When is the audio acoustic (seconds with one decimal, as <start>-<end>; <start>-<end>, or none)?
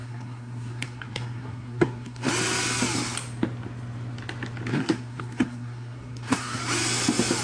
2.3-4.7; 6.6-7.4